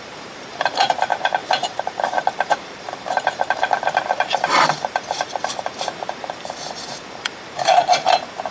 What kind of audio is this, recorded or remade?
remade